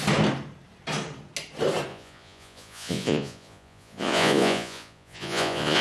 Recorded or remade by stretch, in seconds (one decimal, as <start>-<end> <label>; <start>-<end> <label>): 0.0-1.9 recorded; 1.9-5.8 remade